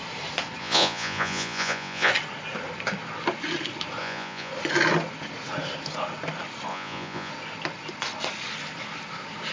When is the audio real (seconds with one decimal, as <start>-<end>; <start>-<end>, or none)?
0.0-0.6; 2.1-4.0; 4.5-6.7; 7.3-9.5